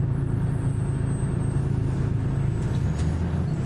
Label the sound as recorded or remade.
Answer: recorded